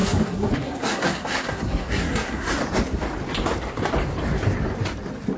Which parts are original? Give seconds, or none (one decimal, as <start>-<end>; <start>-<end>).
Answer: 2.6-5.4